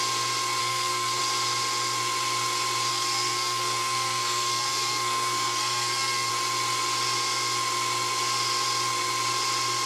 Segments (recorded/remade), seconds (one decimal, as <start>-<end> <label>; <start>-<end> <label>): 0.0-0.6 recorded; 0.6-1.2 remade; 1.2-2.9 recorded; 2.9-6.3 remade; 6.3-9.9 recorded